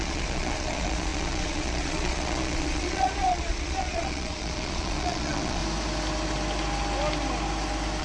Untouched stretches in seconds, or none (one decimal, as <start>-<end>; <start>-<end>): 5.6-8.0